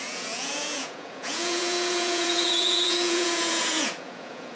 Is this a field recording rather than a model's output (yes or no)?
no